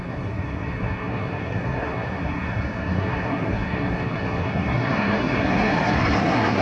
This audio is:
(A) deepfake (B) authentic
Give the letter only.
A